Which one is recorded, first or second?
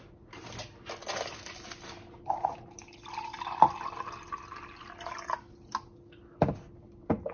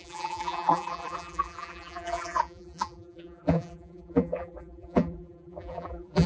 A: first